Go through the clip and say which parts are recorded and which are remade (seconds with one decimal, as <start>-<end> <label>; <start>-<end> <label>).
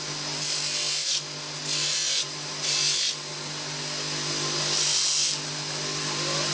0.0-6.5 recorded